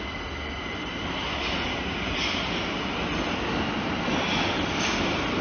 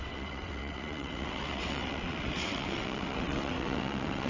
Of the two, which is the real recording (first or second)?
first